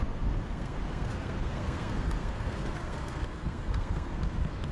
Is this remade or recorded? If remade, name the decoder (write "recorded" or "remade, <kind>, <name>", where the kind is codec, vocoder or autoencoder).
remade, codec, SNAC